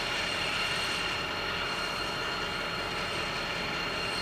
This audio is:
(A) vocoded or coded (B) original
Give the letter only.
B